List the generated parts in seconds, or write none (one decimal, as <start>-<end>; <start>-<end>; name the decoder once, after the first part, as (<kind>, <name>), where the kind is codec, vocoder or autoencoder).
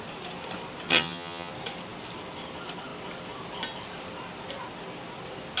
0.9-1.5 (vocoder, HiFi-GAN)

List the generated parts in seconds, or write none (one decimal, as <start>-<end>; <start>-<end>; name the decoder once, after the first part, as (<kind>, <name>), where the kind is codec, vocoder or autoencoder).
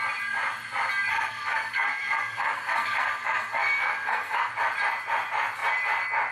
1.1-4.5 (codec, SNAC)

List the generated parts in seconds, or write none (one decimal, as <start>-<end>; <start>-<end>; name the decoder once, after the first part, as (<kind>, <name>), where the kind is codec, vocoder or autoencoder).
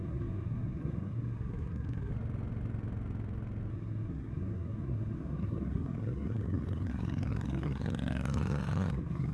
0.0-2.1 (codec, SNAC); 3.7-9.3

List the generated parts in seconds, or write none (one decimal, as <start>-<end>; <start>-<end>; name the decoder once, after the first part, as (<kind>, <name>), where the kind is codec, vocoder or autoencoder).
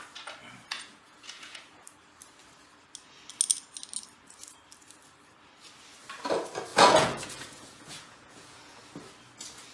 0.7-1.8 (vocoder, Vocos); 6.7-8.8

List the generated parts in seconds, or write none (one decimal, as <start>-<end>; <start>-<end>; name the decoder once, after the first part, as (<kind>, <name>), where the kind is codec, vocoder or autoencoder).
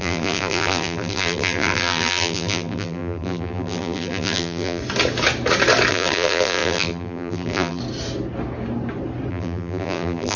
0.0-4.8 (vocoder, BigVGAN v2); 5.9-7.8; 9.3-10.4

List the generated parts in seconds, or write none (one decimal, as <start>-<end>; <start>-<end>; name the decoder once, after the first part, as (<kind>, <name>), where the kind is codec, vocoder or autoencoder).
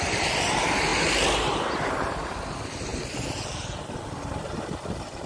none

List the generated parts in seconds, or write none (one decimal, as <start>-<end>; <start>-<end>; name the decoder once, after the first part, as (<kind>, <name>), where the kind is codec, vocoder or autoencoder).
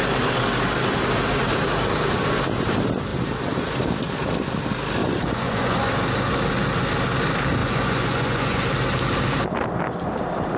5.0-5.9 (vocoder, Vocos); 7.6-8.6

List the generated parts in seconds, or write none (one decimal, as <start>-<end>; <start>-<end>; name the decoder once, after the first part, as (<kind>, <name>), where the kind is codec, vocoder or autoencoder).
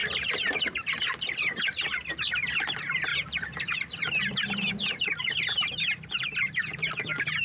0.0-0.6 (vocoder, BigVGAN v2)